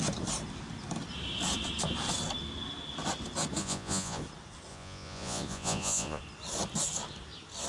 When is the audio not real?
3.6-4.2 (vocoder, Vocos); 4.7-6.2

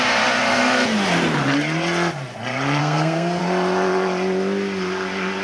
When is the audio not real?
2.8-3.4 (codec, SNAC)

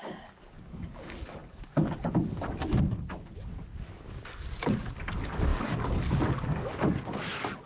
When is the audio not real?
0.0-7.7 (codec, DAC)

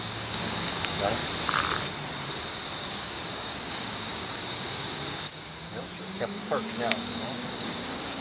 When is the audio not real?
0.0-1.2 (codec, DAC); 2.9-8.2